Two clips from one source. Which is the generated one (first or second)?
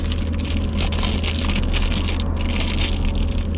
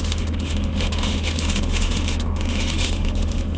second